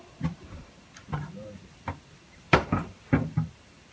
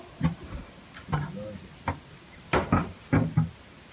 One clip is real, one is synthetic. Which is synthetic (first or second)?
first